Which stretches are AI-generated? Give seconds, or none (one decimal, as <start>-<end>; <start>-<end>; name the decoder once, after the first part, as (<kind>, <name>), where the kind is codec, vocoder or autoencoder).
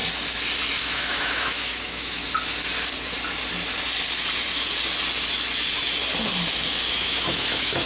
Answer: 0.8-2.2 (autoencoder, DAC-VAE); 6.9-7.9